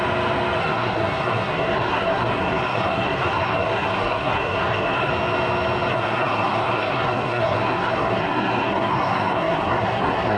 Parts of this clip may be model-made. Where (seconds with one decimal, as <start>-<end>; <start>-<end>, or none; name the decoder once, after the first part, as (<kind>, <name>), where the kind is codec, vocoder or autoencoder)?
0.6-5.1 (codec, SNAC); 5.9-10.4